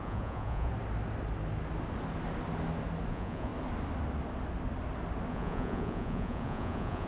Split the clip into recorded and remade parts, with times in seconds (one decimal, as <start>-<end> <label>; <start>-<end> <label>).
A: 0.0-0.7 remade; 0.7-3.1 recorded; 3.1-3.5 remade; 3.5-5.3 recorded; 5.3-7.1 remade